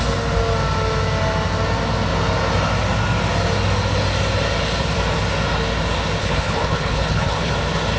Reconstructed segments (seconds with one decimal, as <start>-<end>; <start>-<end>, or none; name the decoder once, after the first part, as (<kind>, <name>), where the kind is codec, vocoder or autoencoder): 6.2-7.5 (codec, HILCodec)